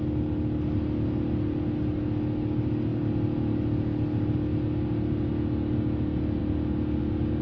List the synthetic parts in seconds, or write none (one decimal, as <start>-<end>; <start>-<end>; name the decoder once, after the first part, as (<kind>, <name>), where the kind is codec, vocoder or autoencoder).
6.4-7.4 (vocoder, BigVGAN v2)